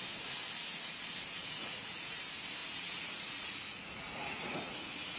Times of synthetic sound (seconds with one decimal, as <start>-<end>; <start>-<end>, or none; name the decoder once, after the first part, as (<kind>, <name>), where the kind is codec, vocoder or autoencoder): 1.4-2.2 (vocoder, Vocos); 2.6-5.2